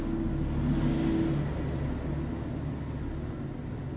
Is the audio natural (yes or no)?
yes